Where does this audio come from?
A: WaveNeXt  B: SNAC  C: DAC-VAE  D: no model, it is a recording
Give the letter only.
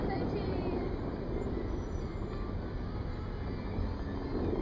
D